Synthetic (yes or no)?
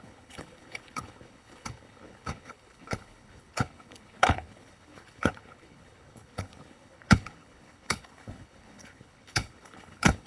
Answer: yes